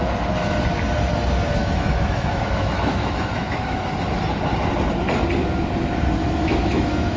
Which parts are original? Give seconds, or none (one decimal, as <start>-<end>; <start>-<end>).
0.0-1.6; 3.9-6.2